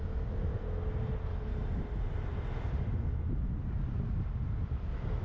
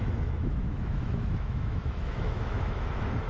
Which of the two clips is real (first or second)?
first